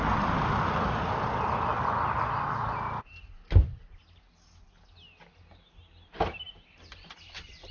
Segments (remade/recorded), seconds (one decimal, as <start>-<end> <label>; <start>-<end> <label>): 0.0-7.7 recorded